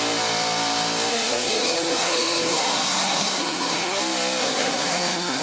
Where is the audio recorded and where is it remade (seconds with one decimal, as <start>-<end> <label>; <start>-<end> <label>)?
0.0-1.1 recorded; 1.1-4.0 remade; 4.0-4.4 recorded; 4.4-5.4 remade